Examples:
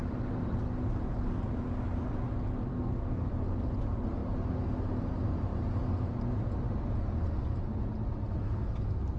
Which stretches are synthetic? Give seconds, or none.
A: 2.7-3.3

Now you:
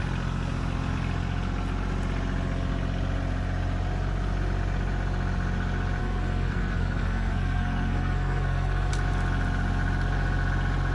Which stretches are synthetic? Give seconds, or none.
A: 6.0-8.9